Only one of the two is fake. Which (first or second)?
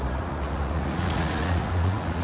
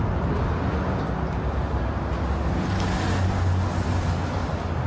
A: first